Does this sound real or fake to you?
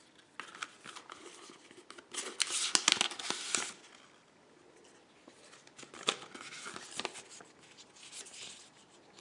real